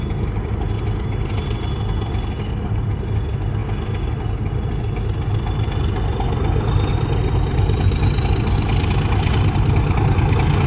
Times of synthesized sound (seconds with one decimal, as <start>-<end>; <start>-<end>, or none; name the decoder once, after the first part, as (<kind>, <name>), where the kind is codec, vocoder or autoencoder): none